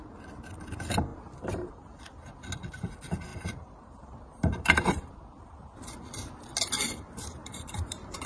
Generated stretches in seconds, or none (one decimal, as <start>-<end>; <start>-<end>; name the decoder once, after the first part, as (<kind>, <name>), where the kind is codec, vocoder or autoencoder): 1.1-2.0 (vocoder, BigVGAN v2); 3.3-5.1; 7.4-8.3